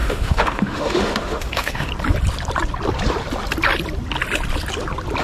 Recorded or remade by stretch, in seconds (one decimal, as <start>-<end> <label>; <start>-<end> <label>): 0.0-1.9 remade; 1.9-5.2 recorded